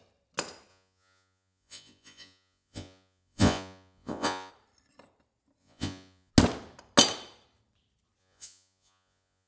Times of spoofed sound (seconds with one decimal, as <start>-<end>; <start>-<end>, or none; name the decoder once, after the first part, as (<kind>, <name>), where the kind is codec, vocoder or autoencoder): 0.7-4.5 (vocoder, Vocos); 5.6-6.3; 8.2-9.5